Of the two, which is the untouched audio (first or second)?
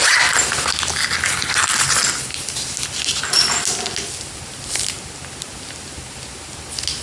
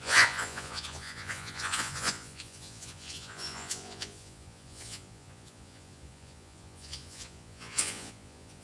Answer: first